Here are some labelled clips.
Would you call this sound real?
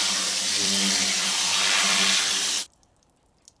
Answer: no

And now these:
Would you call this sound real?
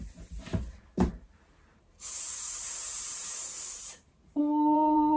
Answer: no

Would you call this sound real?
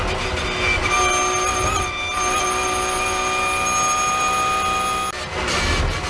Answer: yes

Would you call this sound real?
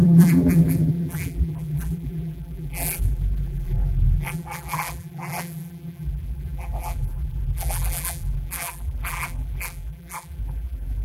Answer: no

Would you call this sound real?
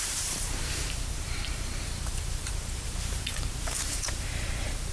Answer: no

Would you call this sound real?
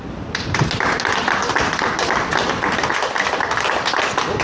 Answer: yes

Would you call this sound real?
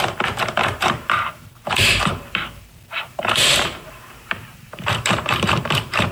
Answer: no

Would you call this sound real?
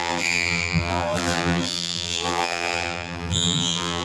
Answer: no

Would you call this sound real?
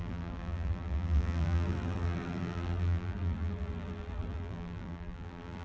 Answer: no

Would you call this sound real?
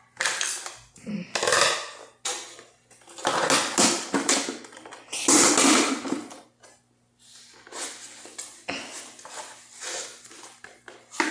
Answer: yes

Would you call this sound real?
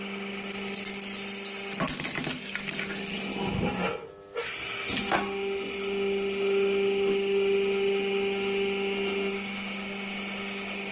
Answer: yes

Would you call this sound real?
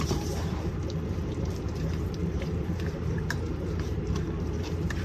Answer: no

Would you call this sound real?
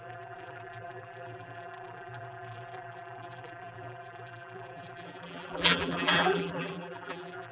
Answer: no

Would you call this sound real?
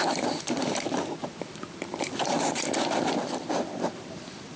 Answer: no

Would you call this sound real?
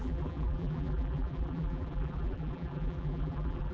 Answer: no